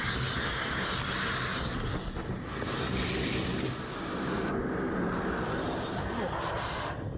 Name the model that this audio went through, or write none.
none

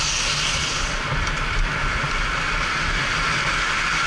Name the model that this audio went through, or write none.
none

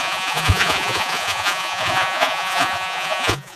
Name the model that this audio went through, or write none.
vocoder, Vocos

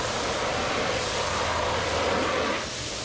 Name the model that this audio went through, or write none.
none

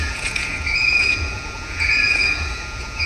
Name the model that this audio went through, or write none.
vocoder, Vocos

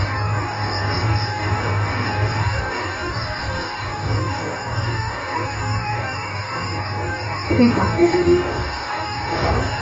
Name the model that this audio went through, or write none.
codec, DAC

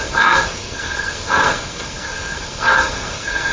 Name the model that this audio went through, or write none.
codec, SNAC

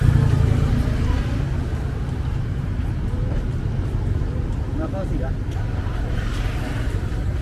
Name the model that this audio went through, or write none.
vocoder, BigVGAN v2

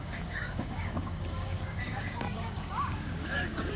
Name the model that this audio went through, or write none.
codec, DAC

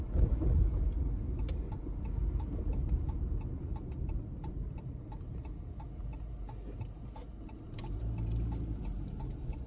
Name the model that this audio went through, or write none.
vocoder, BigVGAN v2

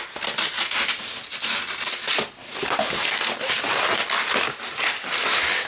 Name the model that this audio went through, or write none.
none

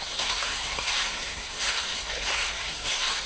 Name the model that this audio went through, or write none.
codec, SNAC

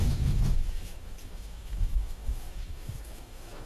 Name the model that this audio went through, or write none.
codec, DAC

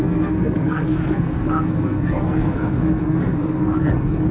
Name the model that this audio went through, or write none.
codec, SNAC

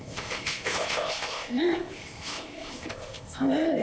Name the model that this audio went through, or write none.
codec, ZipCodec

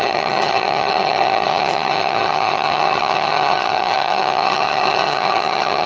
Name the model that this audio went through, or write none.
vocoder, HiFi-GAN